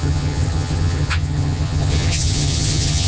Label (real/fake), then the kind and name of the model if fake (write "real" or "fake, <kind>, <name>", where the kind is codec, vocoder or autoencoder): fake, vocoder, HiFi-GAN